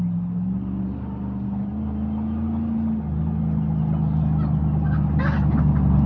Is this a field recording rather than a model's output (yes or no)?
yes